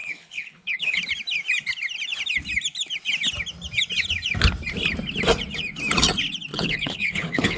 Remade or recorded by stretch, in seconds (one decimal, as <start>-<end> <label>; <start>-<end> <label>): 0.0-1.0 remade; 1.0-6.5 recorded; 6.5-7.6 remade